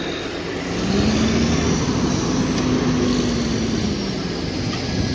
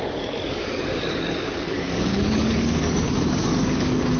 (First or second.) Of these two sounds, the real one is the first